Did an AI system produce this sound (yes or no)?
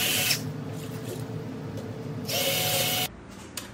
no